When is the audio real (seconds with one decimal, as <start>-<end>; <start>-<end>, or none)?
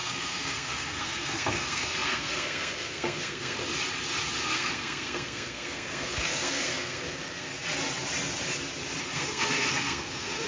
3.6-4.5; 7.5-9.0